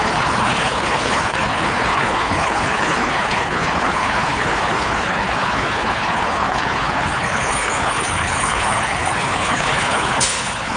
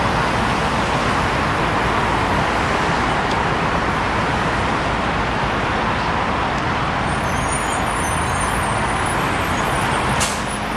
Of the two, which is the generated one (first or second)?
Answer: first